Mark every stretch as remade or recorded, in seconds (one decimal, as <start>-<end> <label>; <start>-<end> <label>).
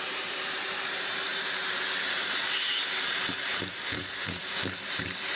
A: 0.0-5.3 remade